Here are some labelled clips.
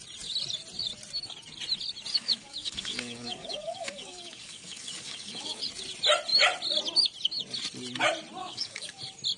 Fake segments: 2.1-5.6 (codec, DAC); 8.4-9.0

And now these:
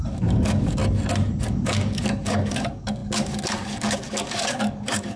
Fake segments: 0.0-0.8 (codec, DAC); 1.4-5.2